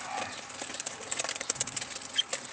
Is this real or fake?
real